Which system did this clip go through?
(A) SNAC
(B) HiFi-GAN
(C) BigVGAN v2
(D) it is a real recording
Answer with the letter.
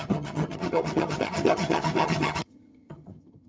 B